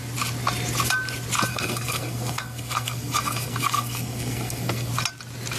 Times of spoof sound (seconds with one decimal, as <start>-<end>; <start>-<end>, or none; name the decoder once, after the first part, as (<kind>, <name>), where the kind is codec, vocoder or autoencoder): 1.5-4.9 (codec, SNAC)